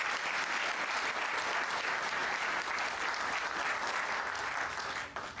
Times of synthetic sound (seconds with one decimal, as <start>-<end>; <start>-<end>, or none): none